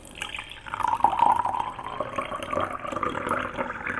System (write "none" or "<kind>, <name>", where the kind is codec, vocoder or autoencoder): none